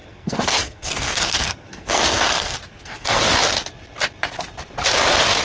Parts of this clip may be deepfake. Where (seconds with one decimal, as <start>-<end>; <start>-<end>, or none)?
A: 0.0-3.2